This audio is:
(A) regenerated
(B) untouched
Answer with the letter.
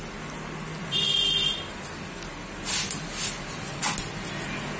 B